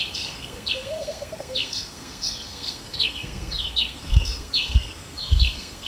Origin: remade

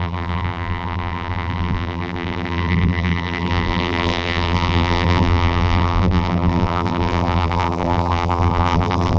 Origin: remade